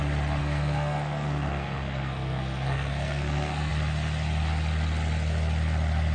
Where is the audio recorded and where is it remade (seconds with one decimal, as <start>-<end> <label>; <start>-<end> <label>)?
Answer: 0.0-0.4 recorded; 0.4-3.7 remade; 3.7-6.1 recorded